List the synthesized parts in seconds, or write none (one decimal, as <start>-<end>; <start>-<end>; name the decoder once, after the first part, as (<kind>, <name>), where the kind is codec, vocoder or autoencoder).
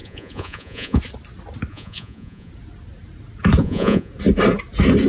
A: 0.0-1.0 (vocoder, Vocos); 1.7-2.5; 3.6-4.1